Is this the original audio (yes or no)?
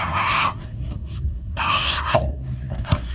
no